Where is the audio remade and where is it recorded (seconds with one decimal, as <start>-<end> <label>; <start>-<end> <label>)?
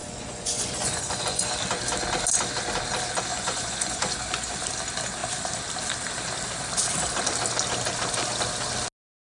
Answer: 0.0-1.5 remade; 1.5-3.3 recorded; 3.3-4.1 remade; 4.1-9.2 recorded